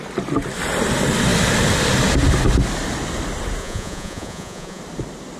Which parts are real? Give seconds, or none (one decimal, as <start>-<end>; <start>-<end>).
0.0-3.6; 4.8-5.4